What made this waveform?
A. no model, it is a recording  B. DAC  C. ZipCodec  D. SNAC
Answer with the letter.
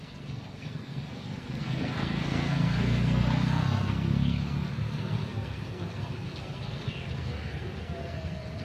D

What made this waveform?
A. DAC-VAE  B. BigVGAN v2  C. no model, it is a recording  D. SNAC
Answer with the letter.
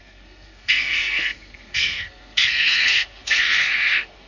D